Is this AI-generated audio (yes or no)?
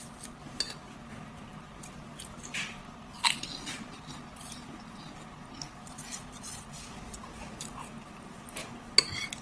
no